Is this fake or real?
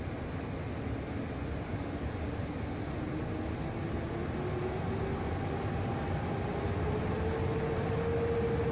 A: real